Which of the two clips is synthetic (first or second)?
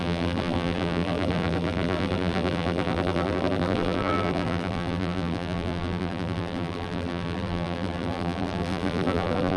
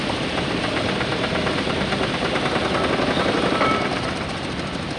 first